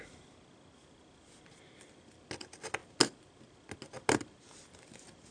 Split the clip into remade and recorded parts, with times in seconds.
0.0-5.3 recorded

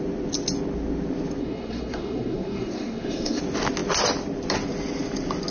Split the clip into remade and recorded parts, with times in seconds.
0.0-1.4 recorded; 1.4-3.4 remade; 3.4-5.5 recorded

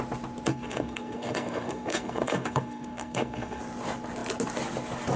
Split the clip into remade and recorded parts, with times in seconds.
0.0-0.5 recorded; 0.5-3.6 remade; 3.6-5.2 recorded

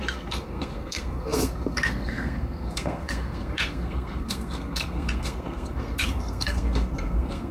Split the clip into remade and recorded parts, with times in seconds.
0.0-7.5 remade

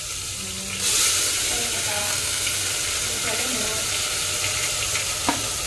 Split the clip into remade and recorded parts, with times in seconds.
0.0-1.9 recorded; 1.9-2.5 remade; 2.5-5.7 recorded

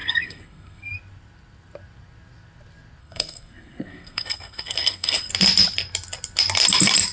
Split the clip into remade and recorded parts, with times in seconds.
0.0-0.9 remade; 0.9-3.0 recorded; 3.0-5.3 remade; 5.3-7.1 recorded